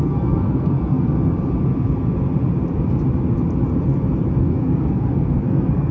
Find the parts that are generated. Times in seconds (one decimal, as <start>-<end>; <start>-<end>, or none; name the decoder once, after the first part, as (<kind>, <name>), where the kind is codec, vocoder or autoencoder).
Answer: 0.0-1.1 (codec, SNAC); 4.4-5.9